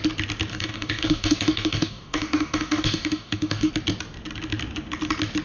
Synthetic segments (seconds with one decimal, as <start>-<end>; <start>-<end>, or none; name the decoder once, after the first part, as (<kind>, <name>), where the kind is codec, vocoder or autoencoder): 0.5-3.7 (codec, DAC)